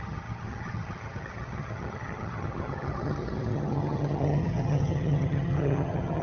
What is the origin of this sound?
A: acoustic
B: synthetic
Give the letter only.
B